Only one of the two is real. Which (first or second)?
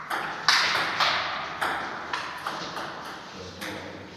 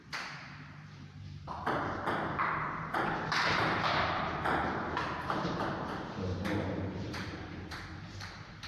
first